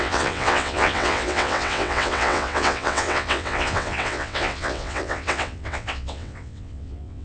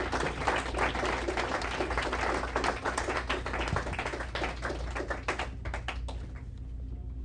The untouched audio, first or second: second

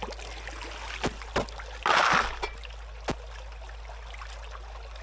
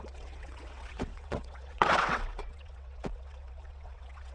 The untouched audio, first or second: first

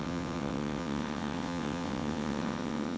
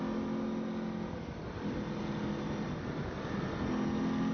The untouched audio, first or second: second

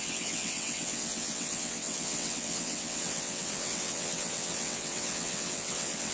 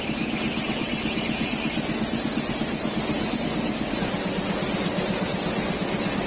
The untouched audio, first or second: second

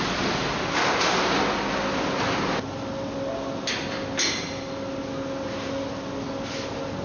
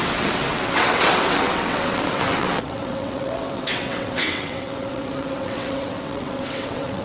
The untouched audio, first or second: first